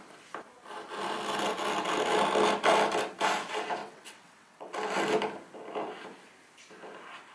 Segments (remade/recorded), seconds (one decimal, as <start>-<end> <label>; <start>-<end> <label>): 0.0-3.8 recorded; 3.8-4.7 remade; 4.7-7.3 recorded